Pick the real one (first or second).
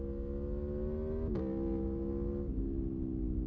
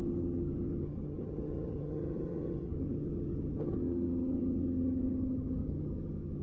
first